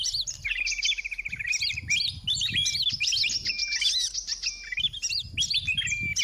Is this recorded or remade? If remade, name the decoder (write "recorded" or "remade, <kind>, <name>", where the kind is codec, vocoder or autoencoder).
recorded